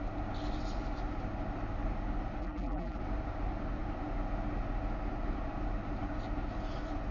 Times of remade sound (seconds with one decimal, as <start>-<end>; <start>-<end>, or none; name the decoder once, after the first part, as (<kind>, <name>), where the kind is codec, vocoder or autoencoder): 2.4-3.0 (vocoder, BigVGAN v2)